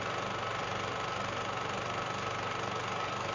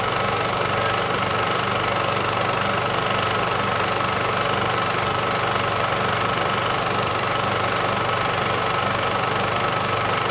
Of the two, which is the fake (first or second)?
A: second